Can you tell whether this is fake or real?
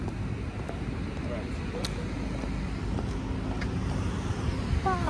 real